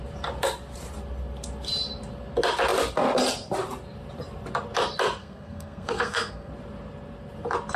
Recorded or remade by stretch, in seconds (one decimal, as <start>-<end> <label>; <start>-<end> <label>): 0.0-5.2 recorded; 5.2-6.5 remade; 6.5-7.8 recorded